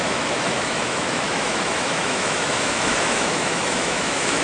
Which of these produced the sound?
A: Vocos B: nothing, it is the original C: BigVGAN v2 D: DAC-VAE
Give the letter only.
D